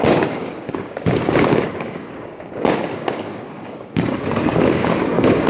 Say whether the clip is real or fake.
fake